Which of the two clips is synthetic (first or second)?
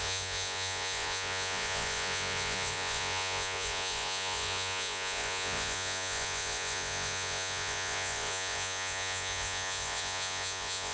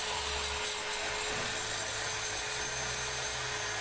first